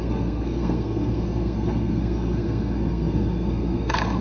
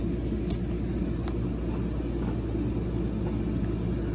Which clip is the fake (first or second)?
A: first